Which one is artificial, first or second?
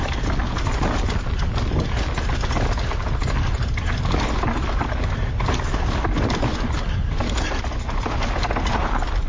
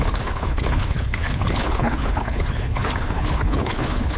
second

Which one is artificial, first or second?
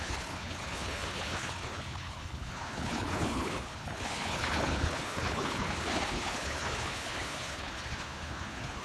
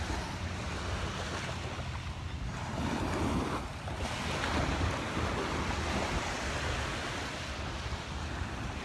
first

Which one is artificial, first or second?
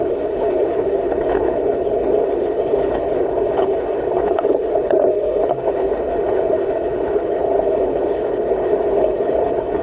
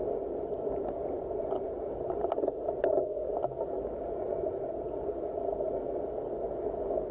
first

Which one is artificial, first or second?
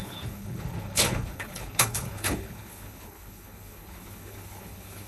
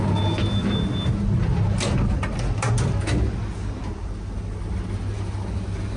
first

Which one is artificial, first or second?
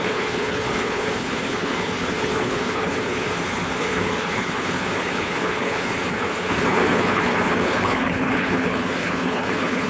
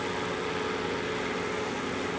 first